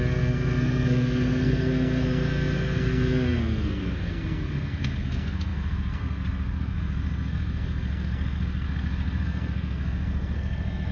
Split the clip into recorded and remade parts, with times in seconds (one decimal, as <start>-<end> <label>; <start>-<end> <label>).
0.0-10.9 remade